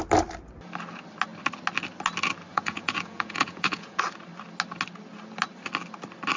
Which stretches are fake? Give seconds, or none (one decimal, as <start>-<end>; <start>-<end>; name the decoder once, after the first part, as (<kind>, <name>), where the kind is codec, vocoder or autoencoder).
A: 2.5-4.0 (vocoder, Vocos)